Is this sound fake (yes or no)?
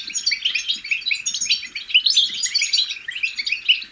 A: no